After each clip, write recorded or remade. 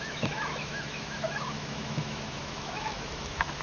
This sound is remade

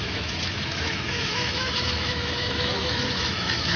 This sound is remade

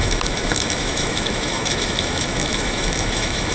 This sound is remade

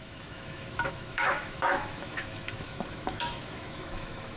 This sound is remade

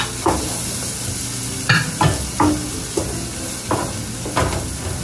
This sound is recorded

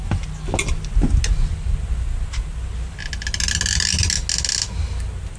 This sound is recorded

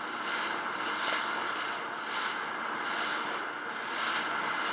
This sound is recorded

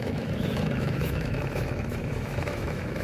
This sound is remade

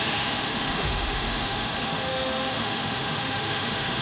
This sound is remade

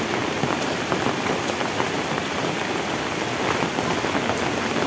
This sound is recorded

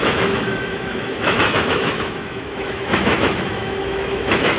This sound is remade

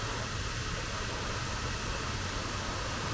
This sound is recorded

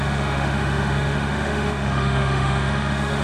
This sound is remade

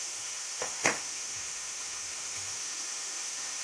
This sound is remade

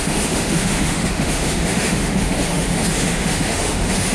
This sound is remade